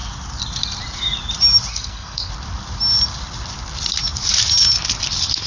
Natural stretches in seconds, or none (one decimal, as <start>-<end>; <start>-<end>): 0.0-1.7; 2.3-5.5